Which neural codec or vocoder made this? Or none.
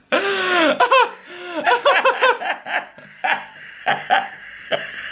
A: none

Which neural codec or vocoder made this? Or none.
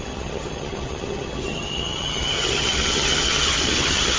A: vocoder, HiFi-GAN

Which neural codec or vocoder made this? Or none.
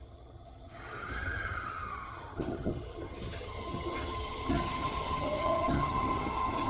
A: vocoder, HiFi-GAN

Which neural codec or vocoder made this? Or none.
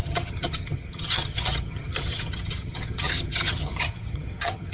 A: vocoder, HiFi-GAN